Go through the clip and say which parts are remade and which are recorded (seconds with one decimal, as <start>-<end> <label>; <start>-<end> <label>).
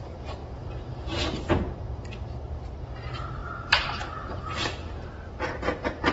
0.0-3.4 recorded; 3.4-5.1 remade; 5.1-6.1 recorded